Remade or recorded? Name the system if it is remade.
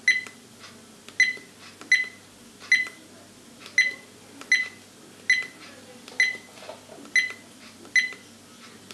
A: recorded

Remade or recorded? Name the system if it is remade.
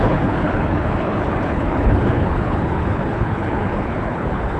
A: remade, codec, HILCodec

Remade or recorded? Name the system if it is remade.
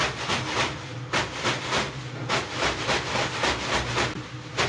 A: recorded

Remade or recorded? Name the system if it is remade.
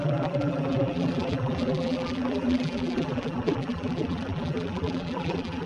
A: remade, vocoder, BigVGAN v2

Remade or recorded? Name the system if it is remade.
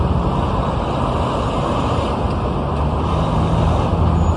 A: recorded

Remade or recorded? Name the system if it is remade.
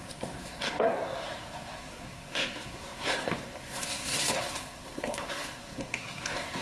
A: remade, codec, SNAC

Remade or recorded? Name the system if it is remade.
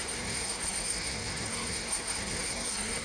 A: remade, codec, SNAC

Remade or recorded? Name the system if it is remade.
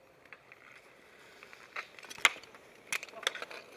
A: recorded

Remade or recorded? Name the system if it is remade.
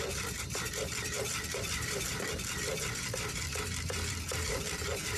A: remade, vocoder, BigVGAN v2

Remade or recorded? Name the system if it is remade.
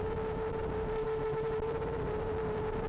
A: remade, vocoder, BigVGAN v2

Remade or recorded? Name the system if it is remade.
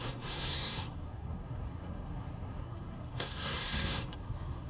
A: remade, codec, SNAC